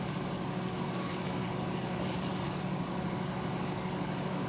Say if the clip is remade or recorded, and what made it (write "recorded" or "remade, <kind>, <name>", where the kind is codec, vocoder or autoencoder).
remade, codec, DAC